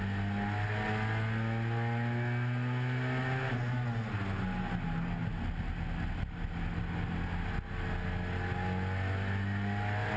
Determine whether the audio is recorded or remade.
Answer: recorded